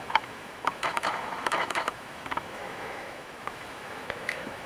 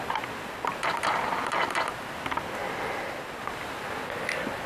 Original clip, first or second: second